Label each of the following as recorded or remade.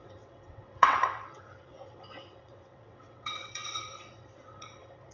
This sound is remade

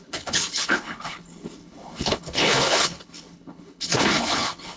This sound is remade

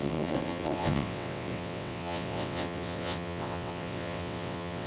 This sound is remade